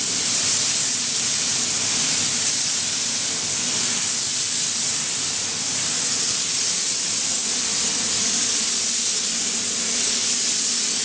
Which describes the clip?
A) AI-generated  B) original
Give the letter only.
B